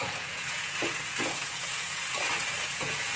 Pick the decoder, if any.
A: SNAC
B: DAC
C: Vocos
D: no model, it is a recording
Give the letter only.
C